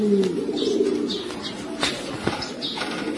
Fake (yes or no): no